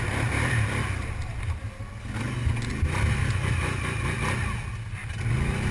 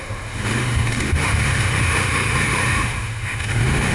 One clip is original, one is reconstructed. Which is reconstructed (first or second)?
second